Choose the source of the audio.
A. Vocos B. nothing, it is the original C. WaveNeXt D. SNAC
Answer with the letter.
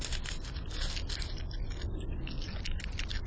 B